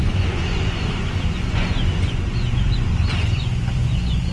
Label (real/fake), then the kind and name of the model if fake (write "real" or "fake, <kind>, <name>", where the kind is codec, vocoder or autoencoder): fake, vocoder, Vocos